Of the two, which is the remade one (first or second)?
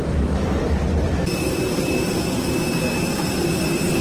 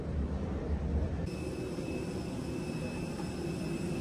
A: first